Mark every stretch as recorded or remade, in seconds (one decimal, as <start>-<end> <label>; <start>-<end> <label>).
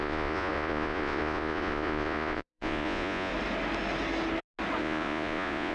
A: 0.0-3.3 remade; 3.3-4.8 recorded; 4.8-5.7 remade